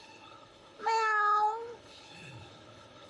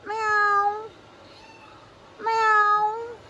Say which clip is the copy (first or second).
first